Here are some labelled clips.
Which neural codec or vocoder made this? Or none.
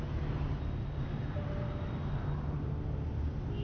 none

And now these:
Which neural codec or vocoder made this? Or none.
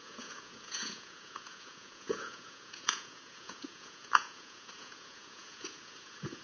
vocoder, Vocos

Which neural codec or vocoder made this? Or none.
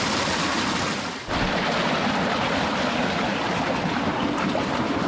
none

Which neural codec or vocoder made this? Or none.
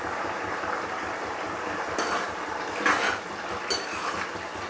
none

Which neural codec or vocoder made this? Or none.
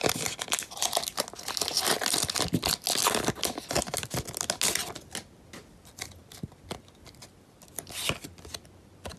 none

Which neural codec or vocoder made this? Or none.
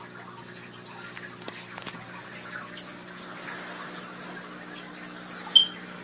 none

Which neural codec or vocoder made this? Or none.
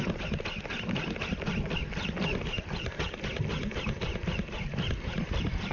none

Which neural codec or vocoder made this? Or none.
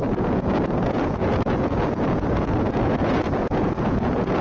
vocoder, Vocos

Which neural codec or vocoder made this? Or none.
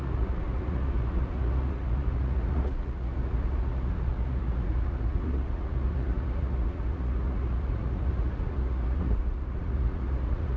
vocoder, Vocos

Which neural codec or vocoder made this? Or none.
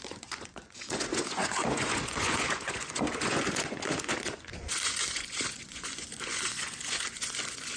vocoder, Vocos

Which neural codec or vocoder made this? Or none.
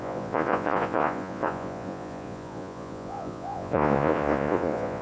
vocoder, Vocos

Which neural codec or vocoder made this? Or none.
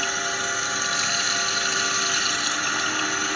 none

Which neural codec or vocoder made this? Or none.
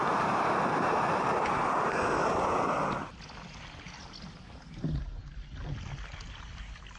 none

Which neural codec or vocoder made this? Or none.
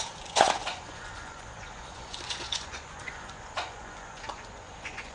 vocoder, Vocos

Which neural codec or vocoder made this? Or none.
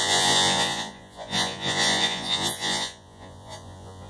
vocoder, Vocos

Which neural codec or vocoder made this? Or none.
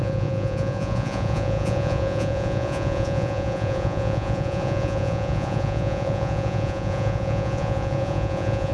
vocoder, Vocos